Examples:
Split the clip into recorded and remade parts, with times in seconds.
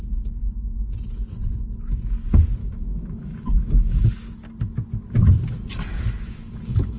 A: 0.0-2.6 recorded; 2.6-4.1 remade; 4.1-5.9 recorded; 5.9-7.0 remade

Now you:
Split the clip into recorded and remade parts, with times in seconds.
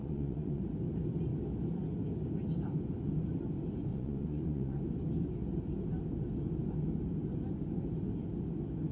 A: 0.0-0.6 remade; 0.6-3.9 recorded; 3.9-4.8 remade; 4.8-8.9 recorded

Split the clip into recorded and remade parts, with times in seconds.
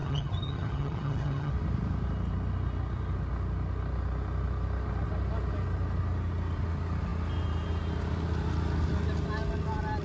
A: 0.0-1.5 remade; 1.5-10.0 recorded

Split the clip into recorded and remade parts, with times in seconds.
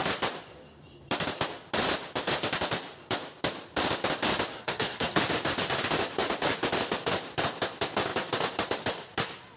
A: 0.0-4.5 recorded; 4.5-5.2 remade; 5.2-9.6 recorded